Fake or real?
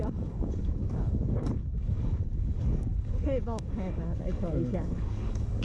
fake